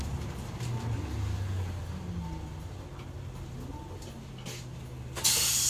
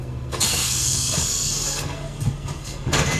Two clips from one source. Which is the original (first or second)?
first